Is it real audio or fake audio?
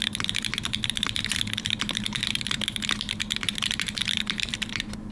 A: fake